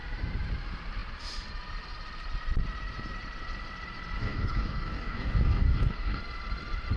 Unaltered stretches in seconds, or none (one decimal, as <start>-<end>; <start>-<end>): 0.0-4.2; 6.2-7.0